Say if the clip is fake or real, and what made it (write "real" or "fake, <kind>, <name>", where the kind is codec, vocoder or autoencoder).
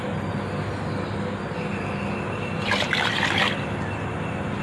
real